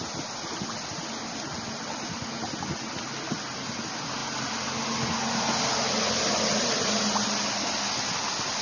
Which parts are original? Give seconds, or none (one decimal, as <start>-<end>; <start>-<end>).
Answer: 0.0-8.6